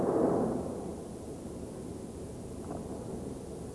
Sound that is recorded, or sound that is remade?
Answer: recorded